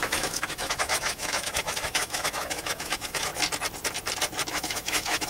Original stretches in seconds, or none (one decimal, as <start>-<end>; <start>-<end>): 3.3-4.5